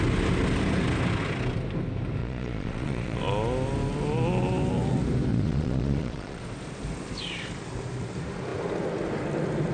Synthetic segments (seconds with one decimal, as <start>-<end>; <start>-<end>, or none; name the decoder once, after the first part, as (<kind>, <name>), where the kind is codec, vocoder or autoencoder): 2.2-3.2 (vocoder, Vocos); 5.3-6.4